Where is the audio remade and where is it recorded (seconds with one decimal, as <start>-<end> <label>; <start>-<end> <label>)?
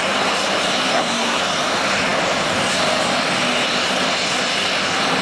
0.0-0.9 recorded; 0.9-1.4 remade; 1.4-5.2 recorded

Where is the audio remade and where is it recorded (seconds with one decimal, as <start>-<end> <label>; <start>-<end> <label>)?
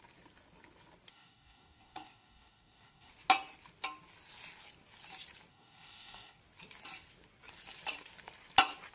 0.0-1.1 recorded; 1.1-3.1 remade; 3.1-5.5 recorded; 5.5-6.4 remade; 6.4-8.9 recorded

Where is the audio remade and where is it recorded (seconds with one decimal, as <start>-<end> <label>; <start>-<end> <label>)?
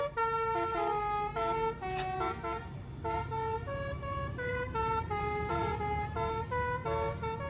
0.0-4.5 recorded; 4.5-5.7 remade; 5.7-7.5 recorded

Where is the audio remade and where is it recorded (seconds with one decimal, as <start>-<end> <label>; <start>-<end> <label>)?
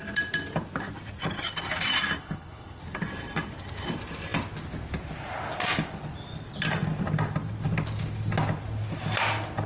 0.0-2.2 recorded; 2.2-2.8 remade; 2.8-9.7 recorded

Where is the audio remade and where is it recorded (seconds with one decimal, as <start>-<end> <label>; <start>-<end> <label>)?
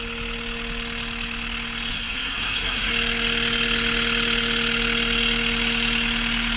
0.0-1.9 recorded; 1.9-2.9 remade; 2.9-6.6 recorded